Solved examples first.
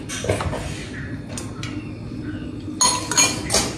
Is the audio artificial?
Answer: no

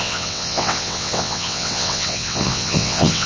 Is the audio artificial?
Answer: yes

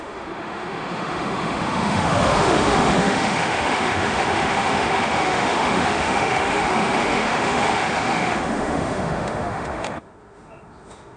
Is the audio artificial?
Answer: yes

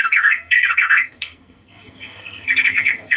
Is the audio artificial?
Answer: yes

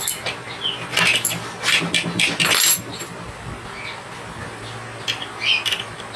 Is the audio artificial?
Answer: no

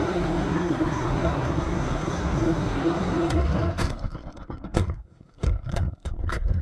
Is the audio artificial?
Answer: yes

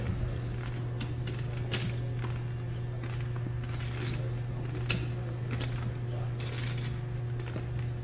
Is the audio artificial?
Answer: no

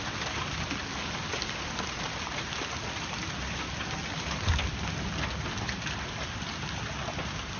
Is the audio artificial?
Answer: no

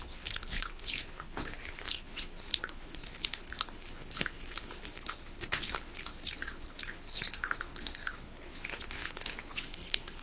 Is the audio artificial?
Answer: yes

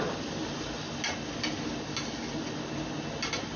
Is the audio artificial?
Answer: no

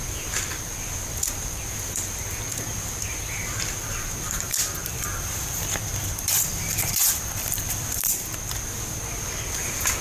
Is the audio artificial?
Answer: yes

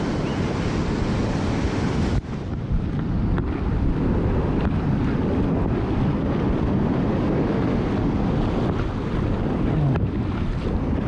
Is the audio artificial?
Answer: no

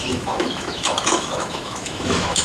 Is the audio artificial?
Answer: yes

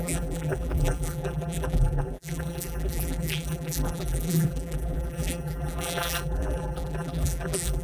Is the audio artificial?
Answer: yes